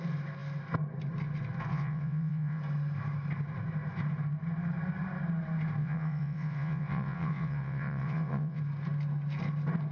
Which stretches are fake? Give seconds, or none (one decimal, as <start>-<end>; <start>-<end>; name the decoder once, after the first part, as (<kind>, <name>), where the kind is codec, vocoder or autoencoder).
1.7-2.6 (vocoder, WaveNeXt); 5.8-8.6